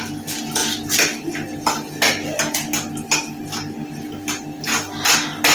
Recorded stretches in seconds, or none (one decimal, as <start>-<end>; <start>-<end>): 0.0-5.5